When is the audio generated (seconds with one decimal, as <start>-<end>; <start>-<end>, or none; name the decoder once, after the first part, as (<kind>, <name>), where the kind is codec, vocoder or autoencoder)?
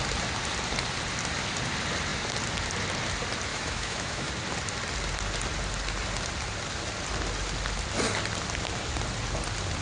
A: 3.5-4.3 (autoencoder, DAC-VAE)